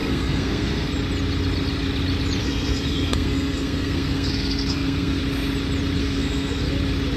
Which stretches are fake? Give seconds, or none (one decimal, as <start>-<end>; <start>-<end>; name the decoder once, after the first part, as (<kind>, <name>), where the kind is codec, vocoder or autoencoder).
0.0-0.9 (codec, SNAC); 2.4-5.2; 6.0-6.7